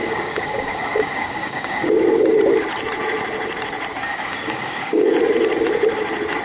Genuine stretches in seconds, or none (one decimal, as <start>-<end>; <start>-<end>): 1.9-4.1; 5.1-6.4